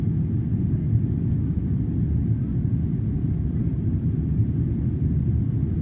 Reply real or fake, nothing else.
real